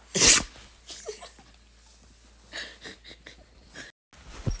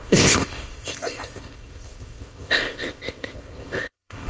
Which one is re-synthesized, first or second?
second